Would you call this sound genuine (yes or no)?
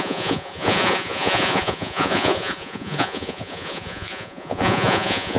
no